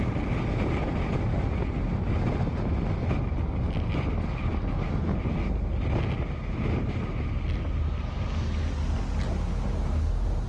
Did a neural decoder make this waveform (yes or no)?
no